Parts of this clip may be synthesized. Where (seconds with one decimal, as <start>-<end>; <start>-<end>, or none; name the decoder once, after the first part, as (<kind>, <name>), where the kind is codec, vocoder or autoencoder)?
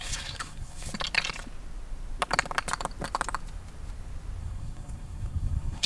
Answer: 0.0-0.9 (codec, SNAC); 4.4-5.9